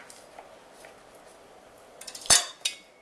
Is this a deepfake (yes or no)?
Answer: no